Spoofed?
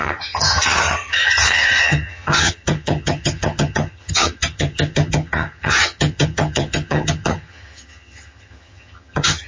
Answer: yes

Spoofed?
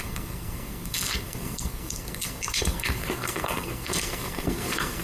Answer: yes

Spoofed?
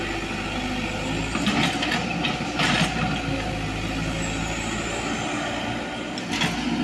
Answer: no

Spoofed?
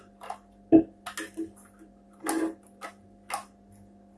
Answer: no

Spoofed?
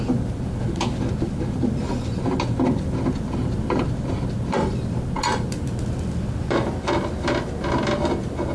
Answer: no